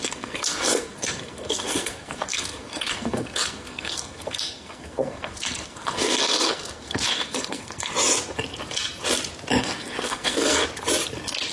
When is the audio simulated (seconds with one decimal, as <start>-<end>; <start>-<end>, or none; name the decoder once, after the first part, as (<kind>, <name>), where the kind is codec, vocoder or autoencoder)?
0.0-7.9 (codec, SNAC); 9.6-10.6

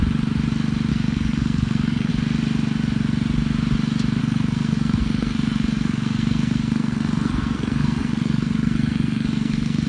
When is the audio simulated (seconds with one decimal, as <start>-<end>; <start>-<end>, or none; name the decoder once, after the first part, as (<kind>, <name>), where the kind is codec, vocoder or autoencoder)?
0.9-2.1 (codec, SNAC); 4.2-9.9